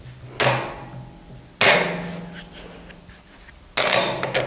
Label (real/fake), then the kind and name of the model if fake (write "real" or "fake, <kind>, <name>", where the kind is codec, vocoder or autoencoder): real